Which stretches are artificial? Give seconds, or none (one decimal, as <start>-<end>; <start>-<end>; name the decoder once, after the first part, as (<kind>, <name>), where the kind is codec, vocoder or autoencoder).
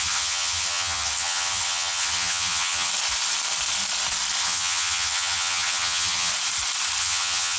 0.0-2.9 (vocoder, HiFi-GAN); 4.4-6.3; 7.0-7.6